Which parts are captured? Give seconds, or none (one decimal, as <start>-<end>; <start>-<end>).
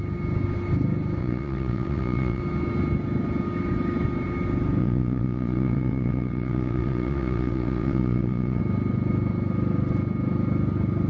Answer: 0.0-1.2; 2.4-4.8; 8.6-11.1